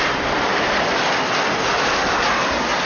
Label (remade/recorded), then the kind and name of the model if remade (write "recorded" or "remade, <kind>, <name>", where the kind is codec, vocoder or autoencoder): recorded